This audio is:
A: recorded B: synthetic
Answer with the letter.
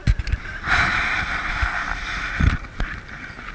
A